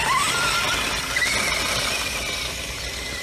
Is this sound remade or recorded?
recorded